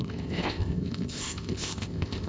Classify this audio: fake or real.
fake